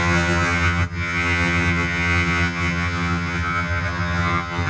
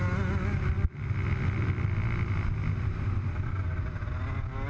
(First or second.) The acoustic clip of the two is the second